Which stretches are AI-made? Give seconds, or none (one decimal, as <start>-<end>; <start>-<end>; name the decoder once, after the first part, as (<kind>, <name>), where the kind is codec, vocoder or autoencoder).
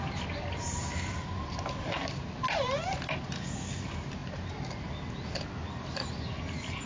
none